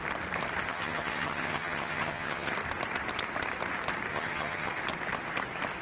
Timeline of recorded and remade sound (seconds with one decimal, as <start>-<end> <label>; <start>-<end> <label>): 0.0-0.7 recorded; 0.7-2.5 remade; 2.5-4.1 recorded; 4.1-4.7 remade; 4.7-5.8 recorded